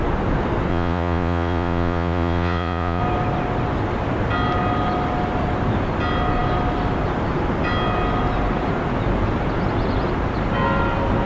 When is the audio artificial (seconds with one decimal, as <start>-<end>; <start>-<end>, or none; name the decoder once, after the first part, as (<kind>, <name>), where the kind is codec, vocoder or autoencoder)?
0.7-3.0 (vocoder, Vocos)